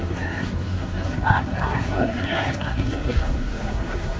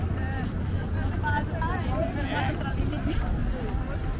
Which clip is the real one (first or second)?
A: second